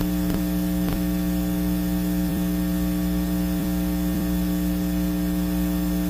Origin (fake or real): fake